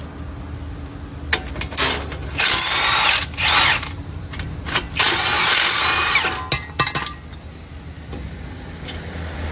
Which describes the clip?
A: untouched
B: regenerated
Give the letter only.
A